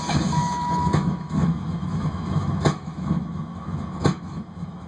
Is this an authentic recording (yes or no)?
no